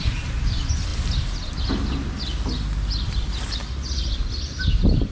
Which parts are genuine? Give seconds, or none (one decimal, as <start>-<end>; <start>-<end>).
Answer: 0.0-5.1